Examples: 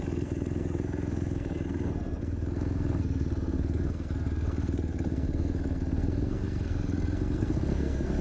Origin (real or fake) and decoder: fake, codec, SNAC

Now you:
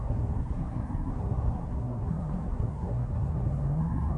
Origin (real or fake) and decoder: fake, codec, SNAC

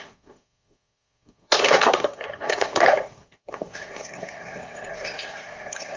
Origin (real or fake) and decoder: fake, codec, SNAC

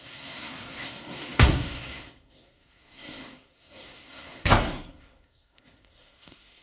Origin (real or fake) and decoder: fake, codec, SNAC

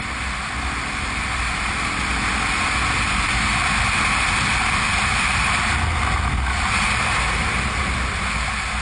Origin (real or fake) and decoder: real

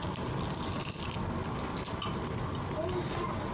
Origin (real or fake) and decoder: real